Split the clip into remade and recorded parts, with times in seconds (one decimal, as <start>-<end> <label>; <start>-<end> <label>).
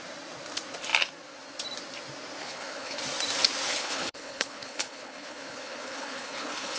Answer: 0.0-2.4 recorded; 2.4-3.0 remade; 3.0-3.7 recorded; 3.7-6.8 remade